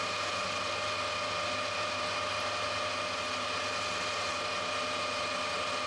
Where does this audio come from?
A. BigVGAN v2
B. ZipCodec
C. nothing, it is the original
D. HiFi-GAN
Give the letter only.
C